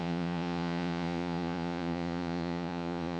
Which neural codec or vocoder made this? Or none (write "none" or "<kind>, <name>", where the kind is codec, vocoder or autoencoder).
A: vocoder, Vocos